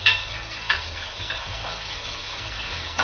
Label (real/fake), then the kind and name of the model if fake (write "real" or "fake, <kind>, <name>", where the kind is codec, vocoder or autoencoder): fake, codec, SNAC